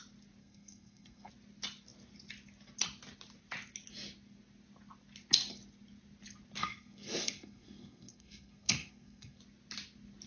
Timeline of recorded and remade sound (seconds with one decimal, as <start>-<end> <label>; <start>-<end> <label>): 0.0-0.4 recorded; 0.4-1.3 remade; 1.3-6.6 recorded; 6.6-9.4 remade; 9.4-10.3 recorded